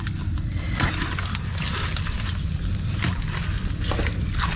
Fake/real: real